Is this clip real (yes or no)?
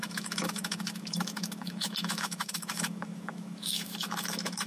no